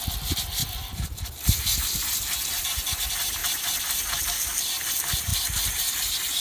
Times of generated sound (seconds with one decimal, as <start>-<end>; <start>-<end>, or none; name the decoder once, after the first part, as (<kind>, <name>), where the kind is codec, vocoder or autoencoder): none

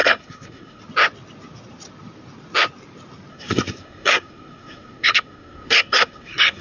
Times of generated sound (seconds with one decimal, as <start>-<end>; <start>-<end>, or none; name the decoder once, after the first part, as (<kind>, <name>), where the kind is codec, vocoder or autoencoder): 0.0-0.8 (codec, SNAC); 3.3-6.6

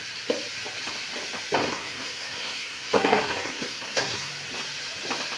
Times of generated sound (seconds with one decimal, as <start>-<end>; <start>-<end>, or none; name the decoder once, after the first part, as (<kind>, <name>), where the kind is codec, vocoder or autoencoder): 1.7-4.3 (codec, SNAC)

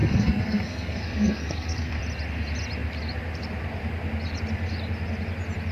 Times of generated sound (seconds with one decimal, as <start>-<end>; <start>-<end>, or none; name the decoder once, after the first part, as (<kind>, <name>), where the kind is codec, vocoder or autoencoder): 0.0-2.0 (codec, SNAC)

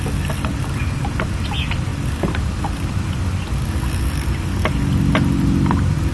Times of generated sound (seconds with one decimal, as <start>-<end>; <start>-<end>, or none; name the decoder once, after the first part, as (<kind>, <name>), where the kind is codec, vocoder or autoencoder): none